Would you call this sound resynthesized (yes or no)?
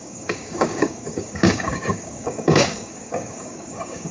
yes